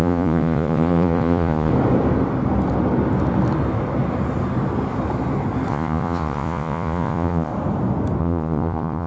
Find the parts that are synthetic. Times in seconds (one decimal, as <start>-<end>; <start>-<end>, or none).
0.0-1.7; 5.7-7.5; 8.2-9.1